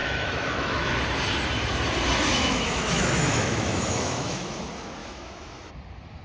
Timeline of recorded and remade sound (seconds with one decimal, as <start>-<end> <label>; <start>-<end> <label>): 0.0-0.9 remade; 0.9-2.3 recorded; 2.3-4.6 remade; 4.6-5.0 recorded; 5.0-5.7 remade; 5.7-6.2 recorded